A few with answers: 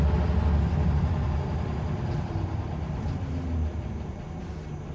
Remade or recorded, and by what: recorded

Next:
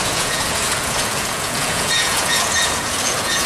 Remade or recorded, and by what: remade, vocoder, Vocos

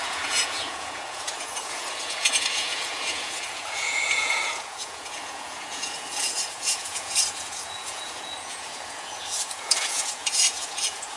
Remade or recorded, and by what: remade, vocoder, Vocos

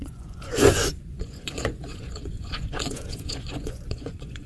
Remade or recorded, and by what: remade, vocoder, Vocos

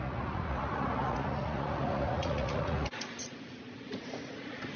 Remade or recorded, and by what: remade, vocoder, Vocos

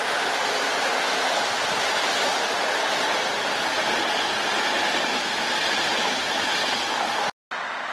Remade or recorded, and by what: recorded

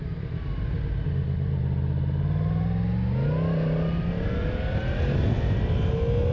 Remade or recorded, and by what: recorded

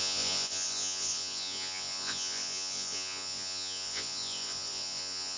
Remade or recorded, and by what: remade, vocoder, Vocos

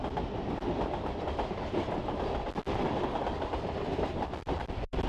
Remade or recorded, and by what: recorded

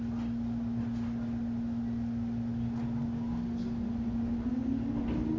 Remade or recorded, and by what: recorded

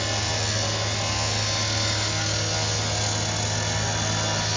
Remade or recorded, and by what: recorded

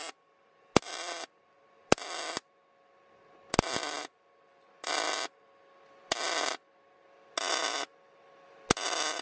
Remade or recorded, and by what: recorded